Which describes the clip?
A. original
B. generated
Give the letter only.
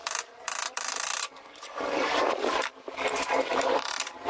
B